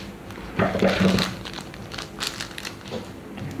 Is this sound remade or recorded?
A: recorded